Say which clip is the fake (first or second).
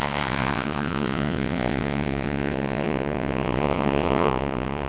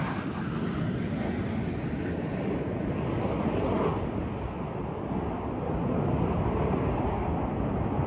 first